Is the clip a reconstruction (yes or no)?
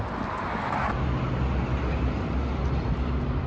no